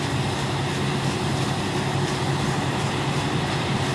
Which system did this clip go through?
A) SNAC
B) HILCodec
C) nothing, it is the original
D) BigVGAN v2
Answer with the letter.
C